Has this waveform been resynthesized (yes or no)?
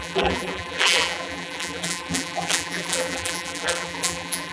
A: yes